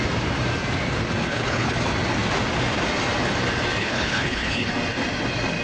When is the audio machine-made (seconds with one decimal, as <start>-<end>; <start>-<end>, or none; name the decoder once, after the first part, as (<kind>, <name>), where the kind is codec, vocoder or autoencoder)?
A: 1.2-1.8 (codec, HILCodec); 3.8-4.7